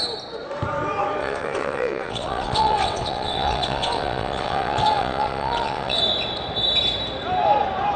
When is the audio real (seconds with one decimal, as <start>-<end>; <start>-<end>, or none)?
0.0-1.2; 6.0-8.0